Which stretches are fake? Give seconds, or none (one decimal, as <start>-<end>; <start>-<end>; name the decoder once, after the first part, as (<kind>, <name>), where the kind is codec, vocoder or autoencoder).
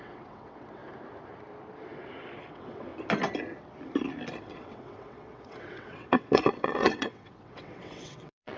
0.0-0.8 (vocoder, WaveNeXt); 2.5-2.9; 4.4-8.6